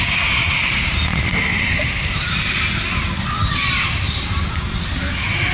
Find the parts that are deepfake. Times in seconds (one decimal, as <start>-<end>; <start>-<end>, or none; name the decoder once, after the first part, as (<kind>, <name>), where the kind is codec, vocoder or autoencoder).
none